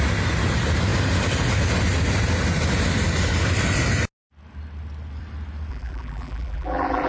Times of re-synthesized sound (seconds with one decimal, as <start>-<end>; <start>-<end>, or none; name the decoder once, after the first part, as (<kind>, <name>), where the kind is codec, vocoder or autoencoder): 5.7-7.1 (vocoder, BigVGAN v2)